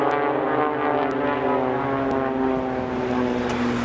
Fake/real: real